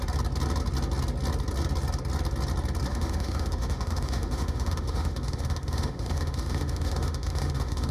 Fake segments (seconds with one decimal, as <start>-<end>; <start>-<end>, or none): 2.9-7.9